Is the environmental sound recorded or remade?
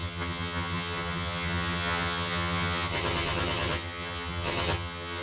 remade